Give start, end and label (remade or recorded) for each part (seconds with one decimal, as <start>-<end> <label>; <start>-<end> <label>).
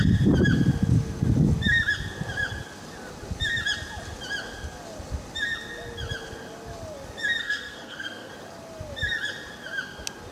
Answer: 0.0-7.4 recorded; 7.4-8.3 remade; 8.3-10.3 recorded